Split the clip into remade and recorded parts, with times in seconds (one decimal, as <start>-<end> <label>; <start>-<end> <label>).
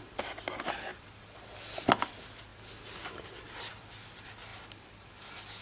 0.0-5.6 recorded